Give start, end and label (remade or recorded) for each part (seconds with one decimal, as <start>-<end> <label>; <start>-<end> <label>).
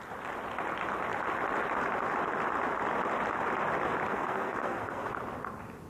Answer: 0.0-4.1 recorded; 4.1-5.1 remade; 5.1-5.9 recorded